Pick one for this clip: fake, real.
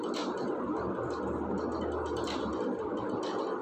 real